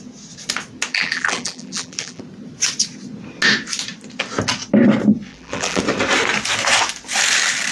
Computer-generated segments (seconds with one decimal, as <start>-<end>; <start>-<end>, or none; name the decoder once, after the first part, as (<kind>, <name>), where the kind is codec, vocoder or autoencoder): 0.9-2.2 (vocoder, BigVGAN v2); 5.3-5.8

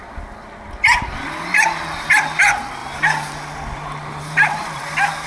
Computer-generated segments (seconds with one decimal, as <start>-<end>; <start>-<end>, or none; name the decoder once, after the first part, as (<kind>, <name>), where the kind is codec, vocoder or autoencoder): 2.8-4.2 (vocoder, BigVGAN v2)